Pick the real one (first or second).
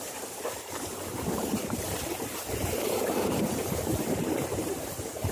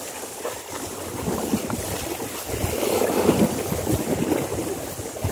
second